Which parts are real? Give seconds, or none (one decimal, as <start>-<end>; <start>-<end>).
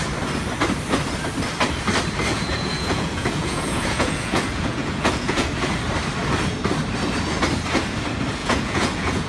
0.0-2.3; 5.5-8.4